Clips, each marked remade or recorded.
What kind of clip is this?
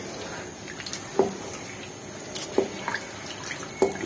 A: recorded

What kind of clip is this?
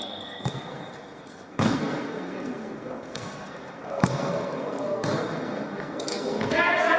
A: remade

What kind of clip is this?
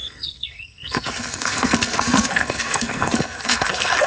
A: remade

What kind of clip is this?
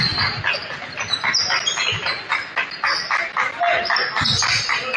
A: recorded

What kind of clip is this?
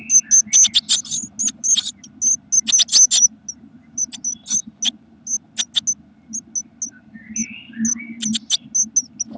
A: recorded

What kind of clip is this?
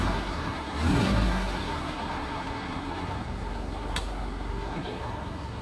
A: remade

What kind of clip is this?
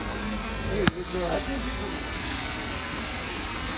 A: remade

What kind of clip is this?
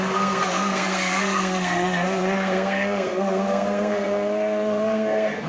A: remade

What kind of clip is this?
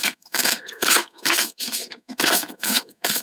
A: remade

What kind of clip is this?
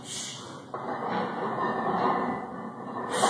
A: recorded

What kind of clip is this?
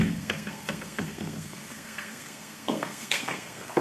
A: remade